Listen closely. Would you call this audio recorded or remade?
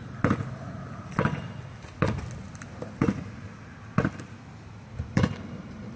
recorded